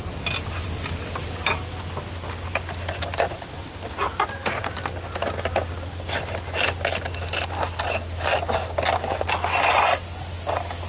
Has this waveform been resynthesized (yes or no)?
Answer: no